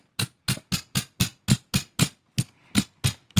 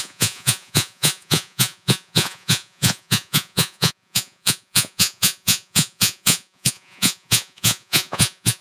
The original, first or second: first